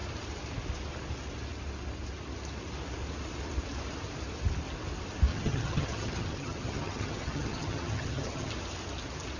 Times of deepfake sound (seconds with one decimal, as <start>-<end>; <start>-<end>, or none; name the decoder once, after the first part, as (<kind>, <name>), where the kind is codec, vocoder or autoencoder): 5.3-8.5 (vocoder, HiFi-GAN)